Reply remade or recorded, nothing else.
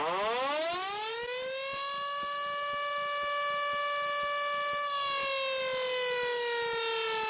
recorded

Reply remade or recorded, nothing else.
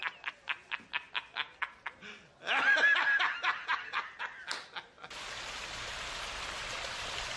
recorded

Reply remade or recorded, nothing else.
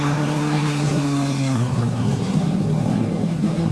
remade